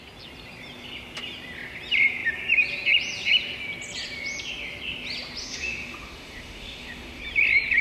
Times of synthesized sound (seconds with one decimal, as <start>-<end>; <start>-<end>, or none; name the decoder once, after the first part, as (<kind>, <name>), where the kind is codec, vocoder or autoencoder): 5.4-7.2 (autoencoder, DAC-VAE)